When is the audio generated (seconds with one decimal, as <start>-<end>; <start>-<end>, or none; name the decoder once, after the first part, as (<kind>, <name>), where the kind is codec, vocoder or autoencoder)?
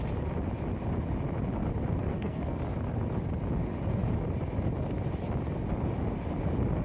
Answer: 2.1-2.6 (codec, SNAC)